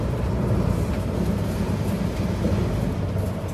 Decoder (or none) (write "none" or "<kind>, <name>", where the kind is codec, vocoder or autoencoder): vocoder, BigVGAN v2